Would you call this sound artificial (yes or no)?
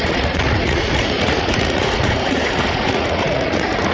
yes